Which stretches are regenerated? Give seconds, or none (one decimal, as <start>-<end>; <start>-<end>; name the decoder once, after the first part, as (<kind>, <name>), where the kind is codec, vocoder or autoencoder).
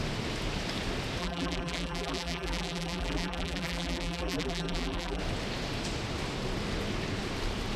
1.2-5.2 (vocoder, BigVGAN v2)